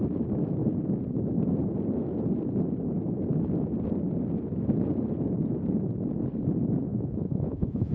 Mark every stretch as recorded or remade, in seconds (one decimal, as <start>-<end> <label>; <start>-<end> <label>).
0.0-6.9 recorded; 6.9-7.9 remade